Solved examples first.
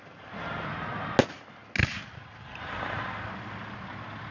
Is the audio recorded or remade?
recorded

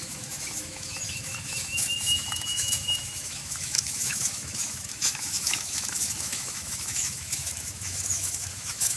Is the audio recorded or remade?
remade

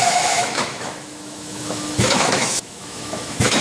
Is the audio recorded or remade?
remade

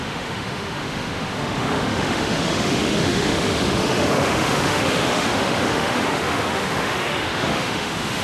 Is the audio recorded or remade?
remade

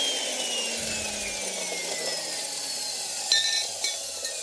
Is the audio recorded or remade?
recorded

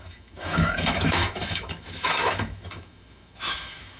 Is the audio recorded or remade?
remade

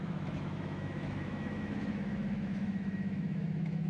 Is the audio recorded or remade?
remade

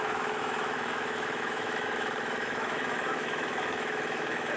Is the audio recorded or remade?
remade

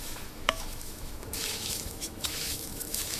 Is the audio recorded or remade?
remade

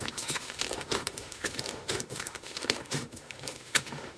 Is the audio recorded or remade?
remade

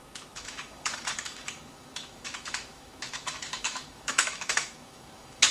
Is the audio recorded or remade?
remade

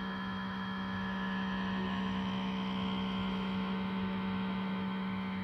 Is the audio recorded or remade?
remade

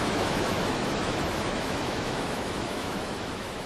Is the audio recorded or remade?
remade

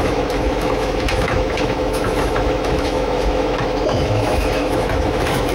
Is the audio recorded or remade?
remade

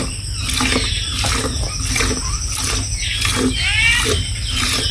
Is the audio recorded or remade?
recorded